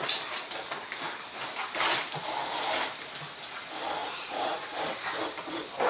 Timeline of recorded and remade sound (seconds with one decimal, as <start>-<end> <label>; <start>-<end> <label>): 0.0-4.0 recorded; 4.0-4.8 remade; 4.8-5.9 recorded